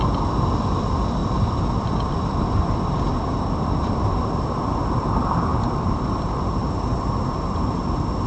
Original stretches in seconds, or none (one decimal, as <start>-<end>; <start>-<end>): 0.0-5.5; 6.5-8.3